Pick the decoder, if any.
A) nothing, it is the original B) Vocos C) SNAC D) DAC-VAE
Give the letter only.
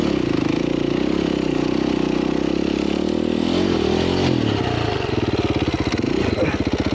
A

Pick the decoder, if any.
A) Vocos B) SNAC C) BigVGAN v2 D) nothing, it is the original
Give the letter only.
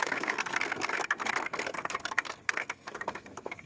B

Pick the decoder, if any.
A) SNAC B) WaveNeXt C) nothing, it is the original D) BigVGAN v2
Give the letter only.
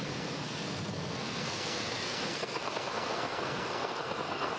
A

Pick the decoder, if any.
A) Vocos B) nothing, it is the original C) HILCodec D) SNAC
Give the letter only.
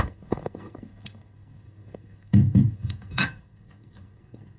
D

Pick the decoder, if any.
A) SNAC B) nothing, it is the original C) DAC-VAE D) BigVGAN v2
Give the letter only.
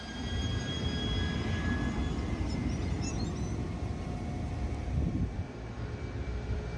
B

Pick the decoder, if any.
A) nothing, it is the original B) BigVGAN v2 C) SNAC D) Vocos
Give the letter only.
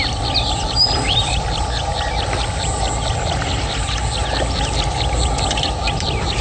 A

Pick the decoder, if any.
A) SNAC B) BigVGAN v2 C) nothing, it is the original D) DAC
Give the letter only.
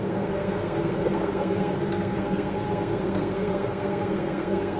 A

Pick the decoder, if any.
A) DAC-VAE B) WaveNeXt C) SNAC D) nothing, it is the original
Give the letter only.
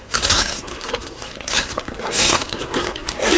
C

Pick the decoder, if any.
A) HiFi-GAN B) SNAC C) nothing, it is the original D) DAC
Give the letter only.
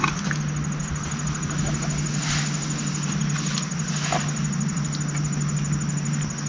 C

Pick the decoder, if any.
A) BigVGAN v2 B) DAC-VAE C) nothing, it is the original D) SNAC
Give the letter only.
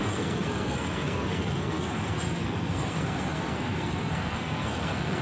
D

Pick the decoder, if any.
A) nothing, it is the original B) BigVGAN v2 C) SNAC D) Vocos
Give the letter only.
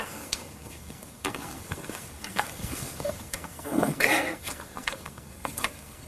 C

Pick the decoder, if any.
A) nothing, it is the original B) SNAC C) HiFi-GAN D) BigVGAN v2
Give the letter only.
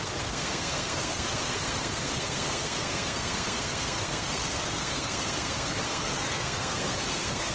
B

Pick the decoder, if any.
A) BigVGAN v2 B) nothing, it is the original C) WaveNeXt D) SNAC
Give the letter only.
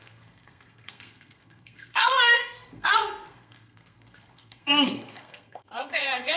D